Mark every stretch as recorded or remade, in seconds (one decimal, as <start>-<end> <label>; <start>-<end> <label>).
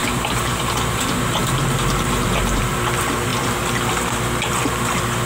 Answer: 0.0-2.6 remade; 2.6-5.3 recorded